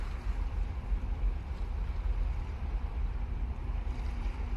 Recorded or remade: remade